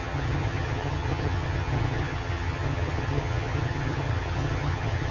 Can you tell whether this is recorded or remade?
remade